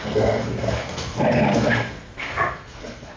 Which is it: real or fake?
fake